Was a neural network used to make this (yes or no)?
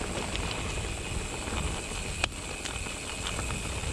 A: no